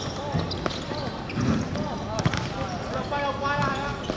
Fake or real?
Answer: real